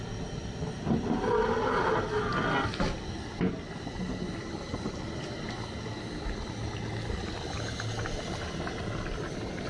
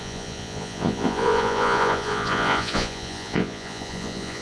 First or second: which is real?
first